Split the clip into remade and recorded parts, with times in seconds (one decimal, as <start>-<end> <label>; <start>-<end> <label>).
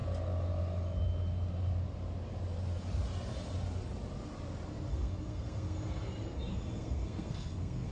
0.0-4.9 recorded; 4.9-6.1 remade; 6.1-6.5 recorded; 6.5-7.9 remade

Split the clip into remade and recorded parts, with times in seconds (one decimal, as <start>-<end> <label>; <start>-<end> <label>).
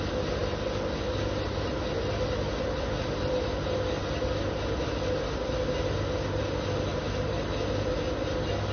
0.0-8.7 recorded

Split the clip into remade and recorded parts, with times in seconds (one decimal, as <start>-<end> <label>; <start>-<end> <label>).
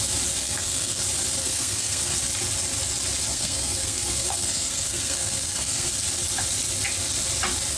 0.0-0.4 recorded; 0.4-1.0 remade; 1.0-1.4 recorded; 1.4-2.2 remade; 2.2-3.3 recorded; 3.3-5.9 remade; 5.9-7.8 recorded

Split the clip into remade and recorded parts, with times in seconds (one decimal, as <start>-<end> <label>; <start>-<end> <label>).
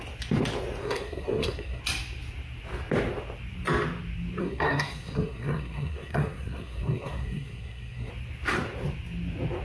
0.0-0.8 recorded; 0.8-1.8 remade; 1.8-4.4 recorded; 4.4-8.1 remade; 8.1-9.6 recorded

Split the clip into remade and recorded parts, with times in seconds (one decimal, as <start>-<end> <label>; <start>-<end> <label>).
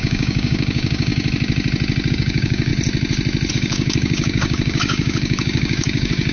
0.0-1.1 remade; 1.1-2.1 recorded; 2.1-2.7 remade; 2.7-3.5 recorded; 3.5-6.3 remade